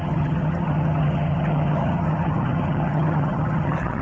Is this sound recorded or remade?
remade